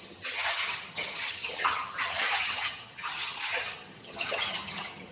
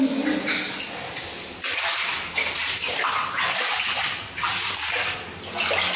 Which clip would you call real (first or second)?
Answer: second